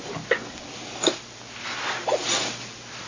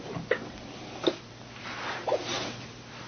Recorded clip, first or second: first